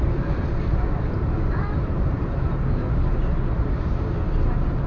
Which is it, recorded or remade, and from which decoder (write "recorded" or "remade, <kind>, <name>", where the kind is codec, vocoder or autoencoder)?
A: recorded